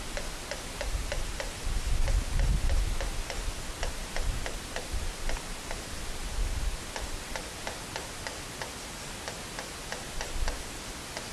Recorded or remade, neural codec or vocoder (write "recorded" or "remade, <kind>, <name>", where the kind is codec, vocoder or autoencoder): recorded